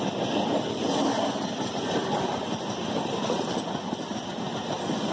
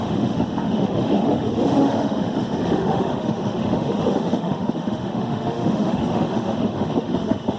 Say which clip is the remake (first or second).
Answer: second